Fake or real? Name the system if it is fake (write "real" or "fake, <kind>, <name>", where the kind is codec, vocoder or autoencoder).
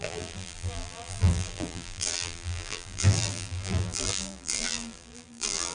fake, vocoder, BigVGAN v2